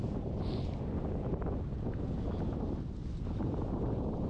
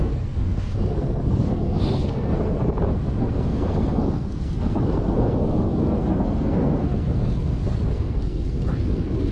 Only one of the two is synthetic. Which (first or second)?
second